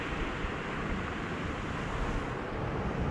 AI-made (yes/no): no